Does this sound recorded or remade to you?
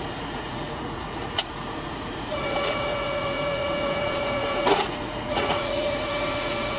remade